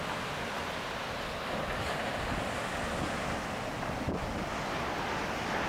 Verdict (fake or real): real